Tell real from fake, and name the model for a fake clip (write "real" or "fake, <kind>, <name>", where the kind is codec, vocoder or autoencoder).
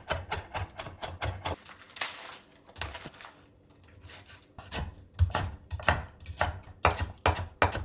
real